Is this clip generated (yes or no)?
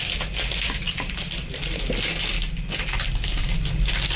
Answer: no